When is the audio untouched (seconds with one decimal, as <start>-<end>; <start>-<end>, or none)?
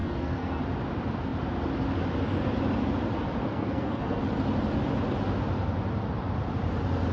0.6-3.5; 4.2-7.1